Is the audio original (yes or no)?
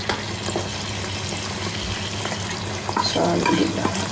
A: yes